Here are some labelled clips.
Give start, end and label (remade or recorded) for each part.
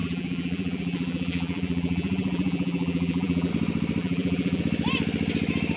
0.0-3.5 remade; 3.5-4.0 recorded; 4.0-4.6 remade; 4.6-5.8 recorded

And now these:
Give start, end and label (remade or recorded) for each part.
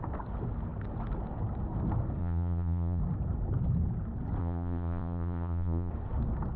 0.0-2.2 recorded; 2.2-3.0 remade; 3.0-4.4 recorded; 4.4-5.9 remade; 5.9-6.6 recorded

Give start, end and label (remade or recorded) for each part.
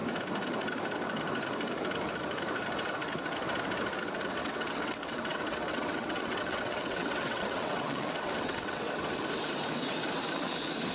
0.0-4.4 recorded; 4.4-8.9 remade; 8.9-10.9 recorded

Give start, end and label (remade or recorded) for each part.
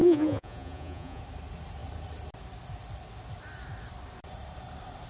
0.0-1.2 remade; 1.2-5.1 recorded